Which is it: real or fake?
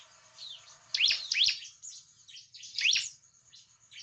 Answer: fake